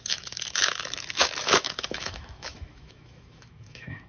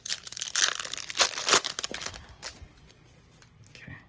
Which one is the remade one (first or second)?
first